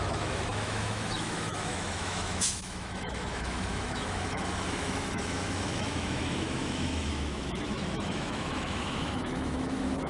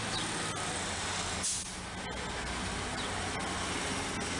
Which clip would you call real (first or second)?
second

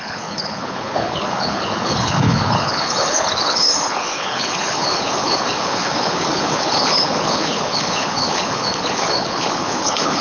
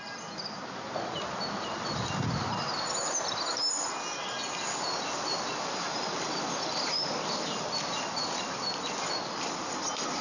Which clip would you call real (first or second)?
second